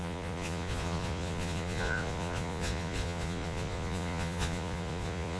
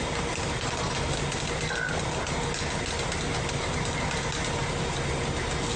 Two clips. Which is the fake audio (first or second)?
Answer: first